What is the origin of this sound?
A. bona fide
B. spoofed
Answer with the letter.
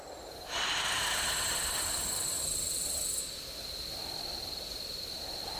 A